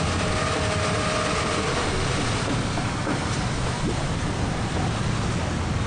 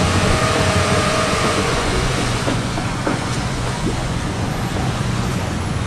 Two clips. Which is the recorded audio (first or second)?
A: first